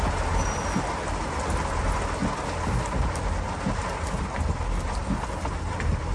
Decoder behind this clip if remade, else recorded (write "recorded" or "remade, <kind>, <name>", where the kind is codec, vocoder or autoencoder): recorded